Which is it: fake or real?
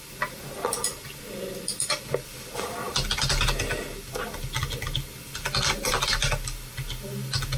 real